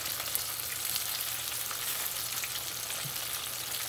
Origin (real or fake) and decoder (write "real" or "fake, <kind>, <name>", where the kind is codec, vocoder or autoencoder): real